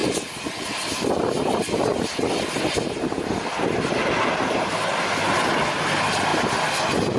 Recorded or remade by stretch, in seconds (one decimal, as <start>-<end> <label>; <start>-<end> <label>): 0.0-0.9 recorded; 0.9-1.9 remade; 1.9-4.4 recorded; 4.4-6.3 remade; 6.3-7.2 recorded